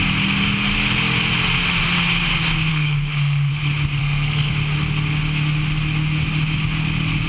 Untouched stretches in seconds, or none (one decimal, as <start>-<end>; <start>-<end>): 0.0-2.7; 3.5-4.0; 4.5-7.3